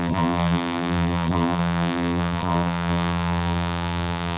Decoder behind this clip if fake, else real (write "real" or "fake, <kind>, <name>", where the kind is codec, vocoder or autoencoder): fake, vocoder, BigVGAN v2